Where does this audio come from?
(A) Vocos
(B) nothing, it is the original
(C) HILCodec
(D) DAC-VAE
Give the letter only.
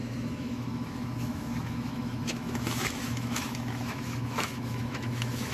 D